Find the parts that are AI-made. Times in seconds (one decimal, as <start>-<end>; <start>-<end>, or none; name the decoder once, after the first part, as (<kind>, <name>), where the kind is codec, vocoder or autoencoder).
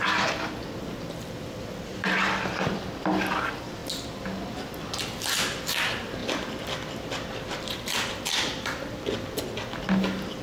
1.9-2.8 (vocoder, BigVGAN v2); 6.2-9.4